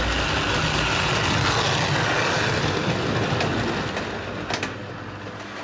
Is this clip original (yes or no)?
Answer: yes